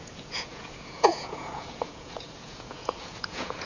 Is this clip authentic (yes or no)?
no